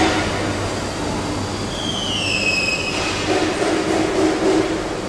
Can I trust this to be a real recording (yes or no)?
yes